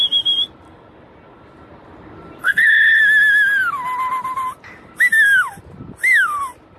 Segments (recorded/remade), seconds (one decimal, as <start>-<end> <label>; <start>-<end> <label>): 0.0-2.4 recorded; 2.4-3.0 remade; 3.0-6.8 recorded

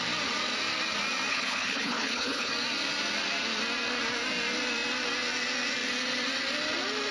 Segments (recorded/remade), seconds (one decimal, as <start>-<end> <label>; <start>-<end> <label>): 0.0-1.3 recorded; 1.3-2.5 remade; 2.5-7.1 recorded